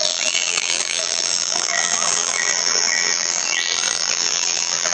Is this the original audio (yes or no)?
no